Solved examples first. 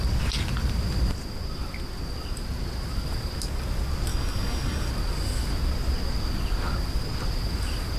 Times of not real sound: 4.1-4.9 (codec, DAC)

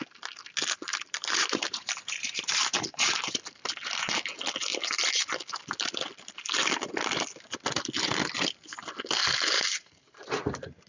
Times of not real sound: 0.9-3.4 (vocoder, BigVGAN v2)